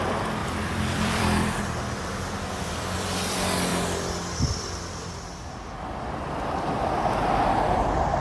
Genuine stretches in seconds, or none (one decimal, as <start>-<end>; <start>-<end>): 0.0-0.4; 1.6-8.2